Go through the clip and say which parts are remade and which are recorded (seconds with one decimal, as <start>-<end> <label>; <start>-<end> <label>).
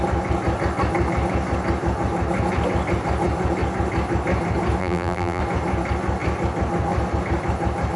0.0-4.8 recorded; 4.8-5.4 remade; 5.4-8.0 recorded